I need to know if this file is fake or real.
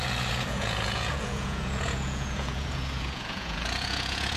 fake